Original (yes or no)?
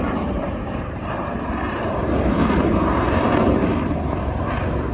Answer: no